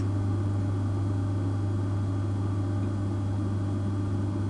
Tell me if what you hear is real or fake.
real